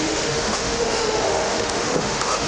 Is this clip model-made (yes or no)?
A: yes